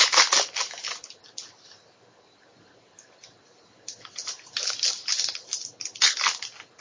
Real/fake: real